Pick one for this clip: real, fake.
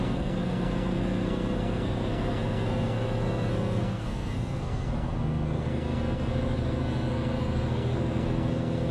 fake